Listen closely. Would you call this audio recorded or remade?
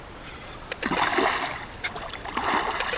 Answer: recorded